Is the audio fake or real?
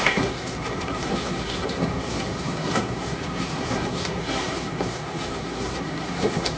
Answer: fake